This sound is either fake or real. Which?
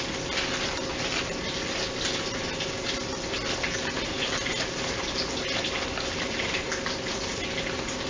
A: real